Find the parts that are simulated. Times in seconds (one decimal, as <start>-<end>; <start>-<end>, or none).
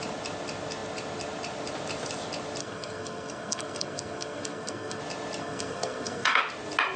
2.6-5.0; 5.4-6.4